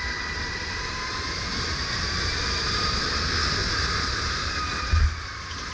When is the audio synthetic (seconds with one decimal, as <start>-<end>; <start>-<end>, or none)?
1.5-3.2; 3.6-5.7